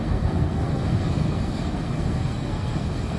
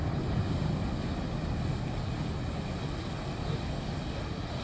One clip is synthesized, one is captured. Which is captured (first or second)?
second